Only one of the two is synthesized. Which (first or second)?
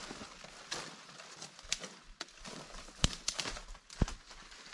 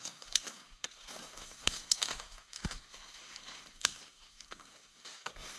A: second